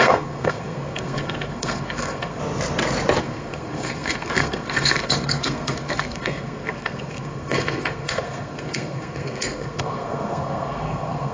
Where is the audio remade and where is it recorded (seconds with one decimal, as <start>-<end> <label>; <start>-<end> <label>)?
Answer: 0.0-2.4 remade; 2.4-3.2 recorded; 3.2-11.3 remade